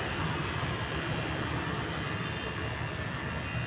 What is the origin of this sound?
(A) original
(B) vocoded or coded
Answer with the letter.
A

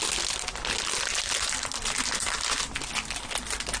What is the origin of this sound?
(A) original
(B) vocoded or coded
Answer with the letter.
A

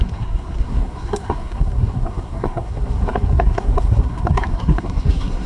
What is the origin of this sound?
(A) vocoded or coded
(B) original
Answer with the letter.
A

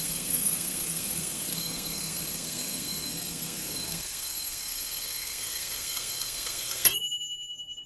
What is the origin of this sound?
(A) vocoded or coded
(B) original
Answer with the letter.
A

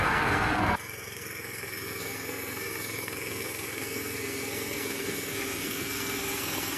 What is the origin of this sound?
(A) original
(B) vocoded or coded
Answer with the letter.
B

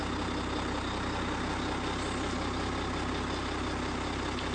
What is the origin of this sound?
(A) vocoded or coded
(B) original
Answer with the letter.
B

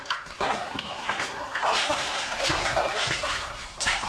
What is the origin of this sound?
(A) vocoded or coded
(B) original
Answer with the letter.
A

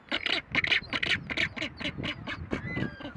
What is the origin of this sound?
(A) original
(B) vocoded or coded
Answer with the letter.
A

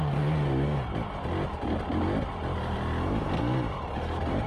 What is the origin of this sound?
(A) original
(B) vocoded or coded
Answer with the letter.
A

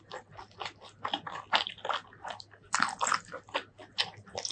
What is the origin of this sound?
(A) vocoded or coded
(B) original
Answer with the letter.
B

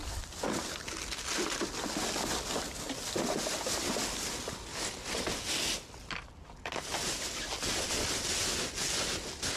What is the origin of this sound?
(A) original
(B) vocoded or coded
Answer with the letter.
A